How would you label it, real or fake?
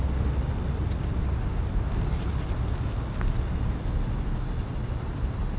real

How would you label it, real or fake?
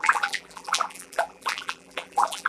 fake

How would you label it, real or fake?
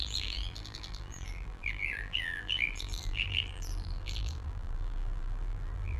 fake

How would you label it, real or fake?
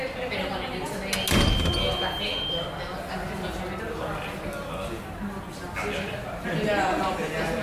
real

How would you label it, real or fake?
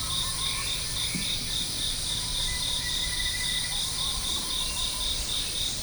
fake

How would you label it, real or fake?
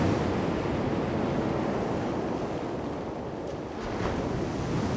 real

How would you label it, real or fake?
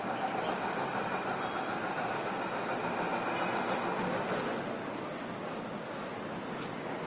real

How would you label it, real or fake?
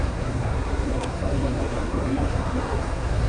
fake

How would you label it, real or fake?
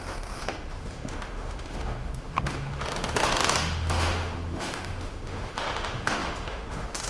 fake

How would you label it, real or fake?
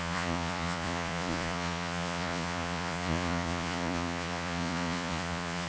fake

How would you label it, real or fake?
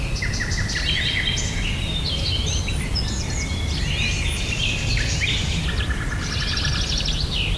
real